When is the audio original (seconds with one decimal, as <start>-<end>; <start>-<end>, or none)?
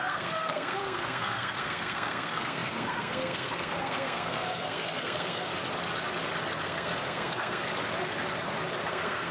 5.5-6.6; 7.6-8.9